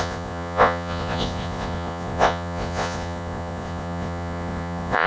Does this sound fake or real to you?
fake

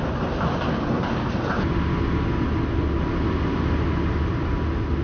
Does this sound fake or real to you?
real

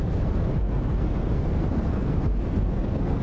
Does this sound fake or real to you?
fake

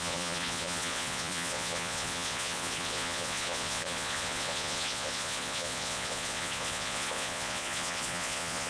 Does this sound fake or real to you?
fake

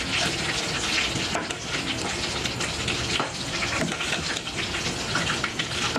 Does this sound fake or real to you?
real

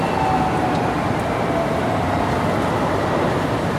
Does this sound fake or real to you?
real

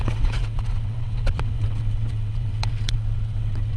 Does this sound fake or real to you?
fake